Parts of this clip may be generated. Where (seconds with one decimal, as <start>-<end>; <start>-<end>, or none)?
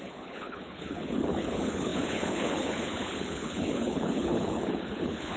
0.0-5.4